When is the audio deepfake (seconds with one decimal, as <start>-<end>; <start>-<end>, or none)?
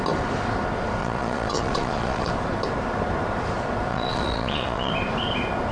1.0-2.3; 3.9-4.9